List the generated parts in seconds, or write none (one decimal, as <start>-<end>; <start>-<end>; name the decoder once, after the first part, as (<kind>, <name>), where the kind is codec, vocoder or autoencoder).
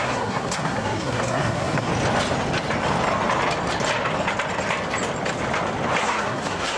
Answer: 0.0-1.9 (codec, SNAC); 6.0-6.8